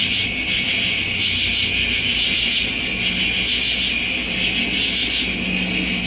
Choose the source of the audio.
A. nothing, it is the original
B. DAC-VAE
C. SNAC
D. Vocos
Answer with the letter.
A